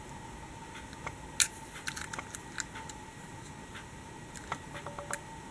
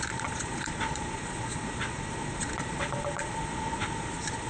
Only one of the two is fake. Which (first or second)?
second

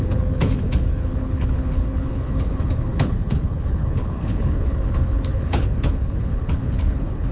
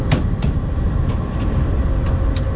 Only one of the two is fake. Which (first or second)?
first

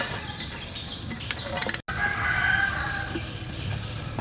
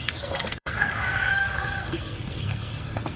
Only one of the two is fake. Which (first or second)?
second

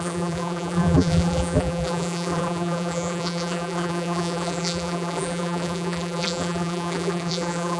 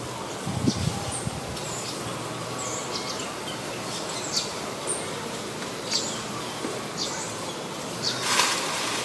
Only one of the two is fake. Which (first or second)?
first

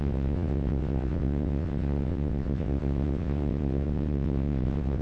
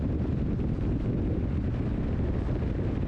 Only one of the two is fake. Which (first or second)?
first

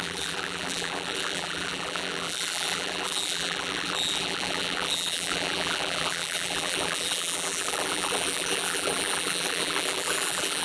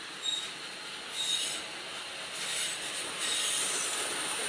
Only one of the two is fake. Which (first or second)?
first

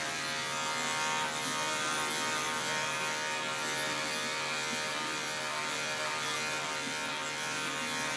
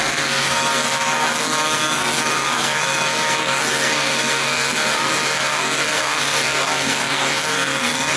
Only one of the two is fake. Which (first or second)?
second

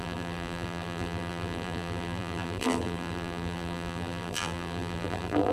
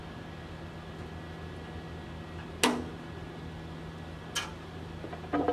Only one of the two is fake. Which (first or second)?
first